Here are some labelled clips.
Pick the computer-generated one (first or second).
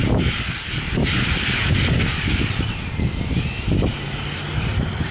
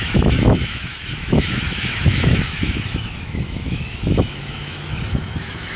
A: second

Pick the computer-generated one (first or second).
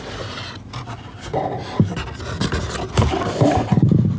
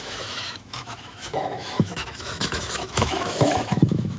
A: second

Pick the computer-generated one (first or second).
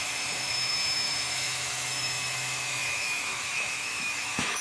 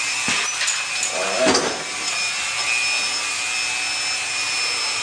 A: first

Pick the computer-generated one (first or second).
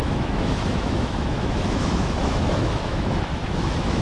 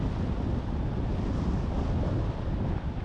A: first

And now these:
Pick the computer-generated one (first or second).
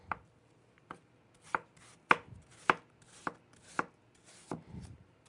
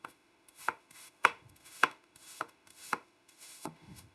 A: second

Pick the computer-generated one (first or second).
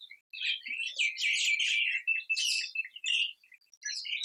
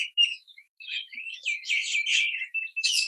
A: second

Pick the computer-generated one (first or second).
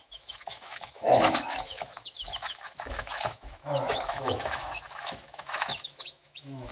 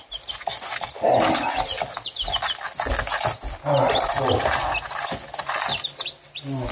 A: first